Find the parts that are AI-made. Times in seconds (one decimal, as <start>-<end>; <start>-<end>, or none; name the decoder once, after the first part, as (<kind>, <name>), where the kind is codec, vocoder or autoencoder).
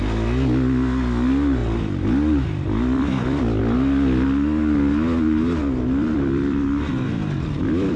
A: 1.6-3.6 (vocoder, BigVGAN v2); 5.6-8.0